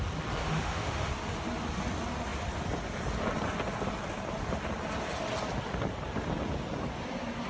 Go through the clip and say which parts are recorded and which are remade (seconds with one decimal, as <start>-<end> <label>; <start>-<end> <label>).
0.0-0.4 recorded; 0.4-1.1 remade; 1.1-7.5 recorded

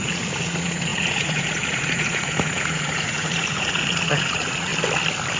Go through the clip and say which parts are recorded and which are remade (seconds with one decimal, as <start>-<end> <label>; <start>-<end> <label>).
0.0-4.7 remade; 4.7-5.4 recorded